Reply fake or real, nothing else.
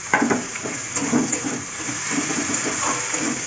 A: fake